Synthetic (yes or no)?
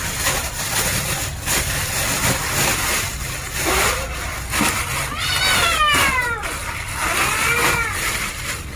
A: no